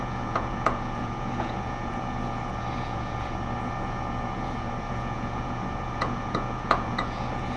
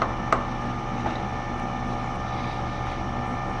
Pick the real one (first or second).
second